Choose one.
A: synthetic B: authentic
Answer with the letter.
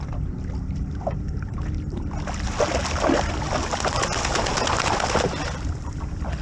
B